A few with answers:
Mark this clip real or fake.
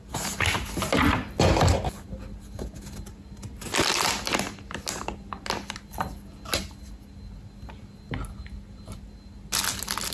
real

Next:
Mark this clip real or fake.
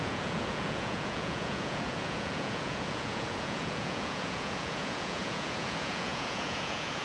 fake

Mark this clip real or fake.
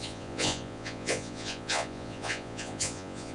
fake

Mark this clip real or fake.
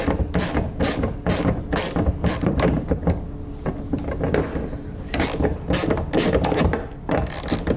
real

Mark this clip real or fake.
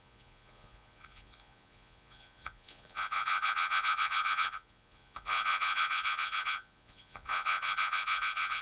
fake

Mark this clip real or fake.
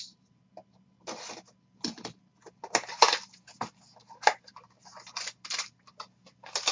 real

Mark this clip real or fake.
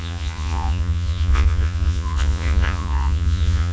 fake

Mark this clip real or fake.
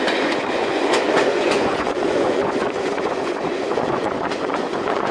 fake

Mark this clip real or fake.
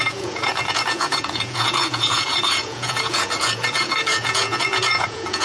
fake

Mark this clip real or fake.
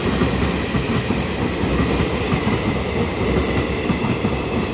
real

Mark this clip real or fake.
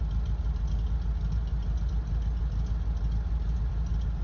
real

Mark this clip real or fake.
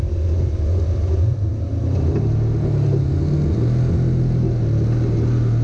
real